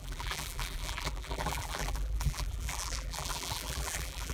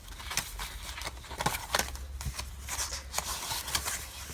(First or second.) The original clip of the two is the second